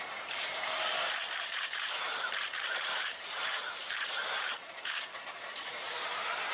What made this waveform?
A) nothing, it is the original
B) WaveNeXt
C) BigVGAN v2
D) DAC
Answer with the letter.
C